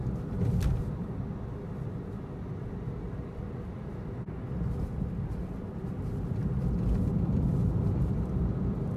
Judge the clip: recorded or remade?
recorded